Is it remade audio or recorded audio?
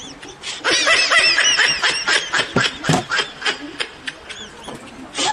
recorded